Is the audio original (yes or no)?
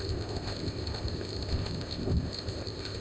no